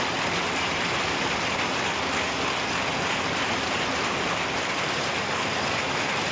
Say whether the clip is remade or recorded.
recorded